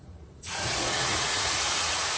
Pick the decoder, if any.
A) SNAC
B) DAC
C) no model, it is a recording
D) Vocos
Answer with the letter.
D